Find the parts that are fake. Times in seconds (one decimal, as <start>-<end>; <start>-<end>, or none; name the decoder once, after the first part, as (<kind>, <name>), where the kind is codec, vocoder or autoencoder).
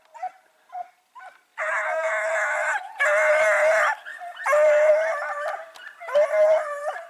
none